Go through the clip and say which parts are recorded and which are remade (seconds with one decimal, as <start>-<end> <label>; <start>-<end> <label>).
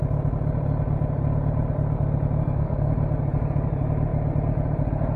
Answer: 0.0-2.4 recorded; 2.4-2.9 remade; 2.9-5.2 recorded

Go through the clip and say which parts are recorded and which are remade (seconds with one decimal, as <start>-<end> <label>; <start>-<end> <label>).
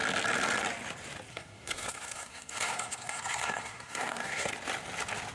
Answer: 0.0-1.3 recorded; 1.3-4.5 remade; 4.5-5.3 recorded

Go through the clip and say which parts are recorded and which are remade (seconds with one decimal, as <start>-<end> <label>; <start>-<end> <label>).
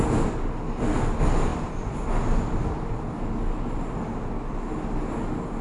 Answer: 0.0-5.6 recorded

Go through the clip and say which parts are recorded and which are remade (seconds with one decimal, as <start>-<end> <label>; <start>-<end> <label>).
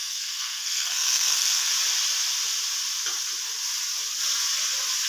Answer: 0.0-1.7 remade; 1.7-5.1 recorded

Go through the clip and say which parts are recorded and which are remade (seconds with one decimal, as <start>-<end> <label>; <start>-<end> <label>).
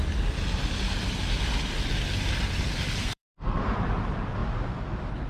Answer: 0.0-3.0 recorded; 3.0-3.6 remade; 3.6-5.3 recorded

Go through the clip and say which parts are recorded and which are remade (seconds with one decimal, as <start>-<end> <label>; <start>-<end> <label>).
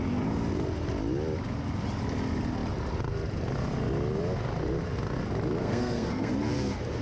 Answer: 0.0-5.6 recorded; 5.6-6.3 remade; 6.3-7.0 recorded